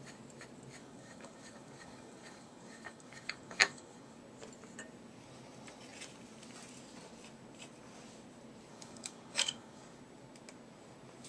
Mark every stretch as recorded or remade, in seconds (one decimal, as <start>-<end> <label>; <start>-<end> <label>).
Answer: 0.0-0.8 recorded; 0.8-4.2 remade; 4.2-8.7 recorded; 8.7-10.0 remade; 10.0-11.3 recorded